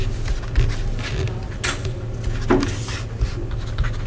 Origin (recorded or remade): recorded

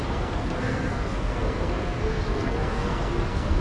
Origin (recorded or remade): remade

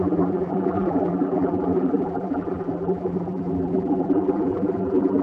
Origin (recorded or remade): remade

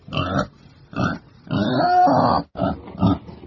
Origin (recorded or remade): recorded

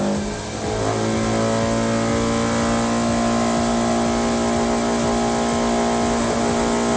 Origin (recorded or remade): recorded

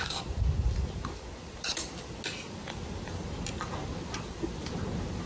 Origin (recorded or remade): recorded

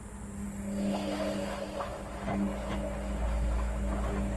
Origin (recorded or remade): recorded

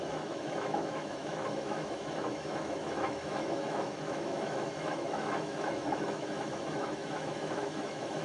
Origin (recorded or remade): remade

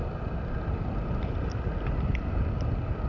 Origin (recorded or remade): recorded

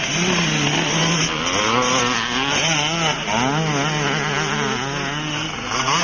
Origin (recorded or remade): recorded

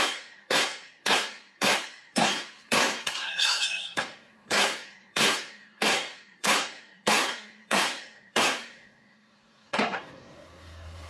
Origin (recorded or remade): remade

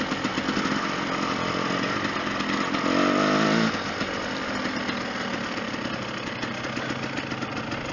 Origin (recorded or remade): recorded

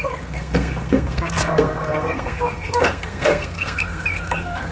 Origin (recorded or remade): remade